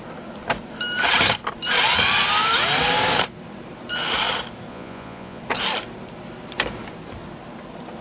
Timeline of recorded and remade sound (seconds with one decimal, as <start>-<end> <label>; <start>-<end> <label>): 0.0-4.7 recorded; 4.7-5.4 remade; 5.4-8.0 recorded